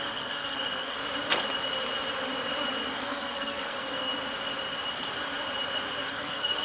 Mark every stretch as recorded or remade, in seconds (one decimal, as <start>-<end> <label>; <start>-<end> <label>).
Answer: 0.0-1.0 remade; 1.0-2.9 recorded; 2.9-4.1 remade; 4.1-6.1 recorded; 6.1-6.6 remade